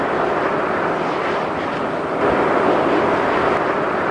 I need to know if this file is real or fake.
real